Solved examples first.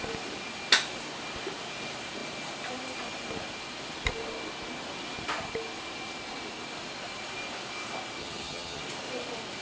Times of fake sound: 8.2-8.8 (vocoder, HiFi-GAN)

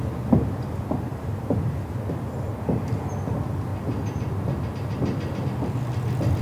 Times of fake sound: none

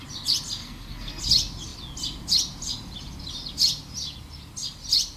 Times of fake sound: 0.6-1.2 (codec, SNAC)

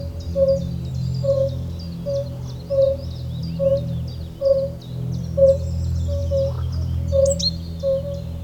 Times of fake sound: none

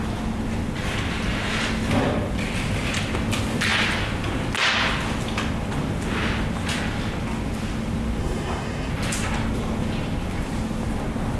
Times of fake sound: 8.2-8.9 (codec, SNAC)

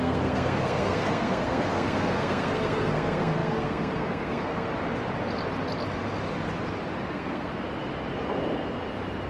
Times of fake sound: 0.0-4.7 (codec, SNAC); 7.1-7.5